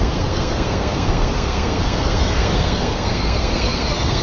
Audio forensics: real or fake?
fake